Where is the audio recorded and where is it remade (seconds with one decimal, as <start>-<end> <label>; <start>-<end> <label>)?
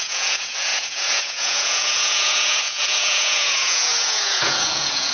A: 0.0-5.1 remade